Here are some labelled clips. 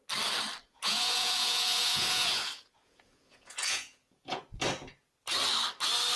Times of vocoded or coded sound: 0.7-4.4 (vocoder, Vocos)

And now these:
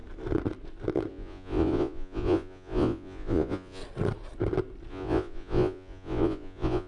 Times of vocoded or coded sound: 1.1-3.8 (vocoder, Vocos); 4.9-6.9

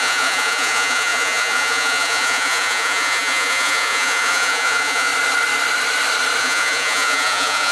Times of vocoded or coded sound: 0.0-5.1 (vocoder, Vocos); 6.4-7.7